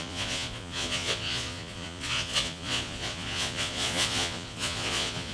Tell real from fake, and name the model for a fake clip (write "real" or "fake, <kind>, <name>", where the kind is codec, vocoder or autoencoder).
fake, vocoder, Vocos